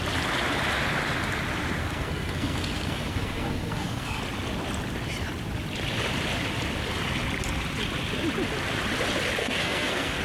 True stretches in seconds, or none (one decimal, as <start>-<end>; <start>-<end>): 0.0-1.8; 4.2-9.4